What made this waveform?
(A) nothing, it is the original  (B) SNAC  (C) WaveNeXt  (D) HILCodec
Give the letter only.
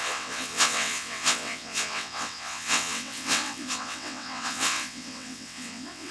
C